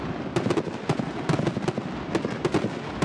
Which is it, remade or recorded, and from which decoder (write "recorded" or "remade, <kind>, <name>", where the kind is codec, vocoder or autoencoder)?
recorded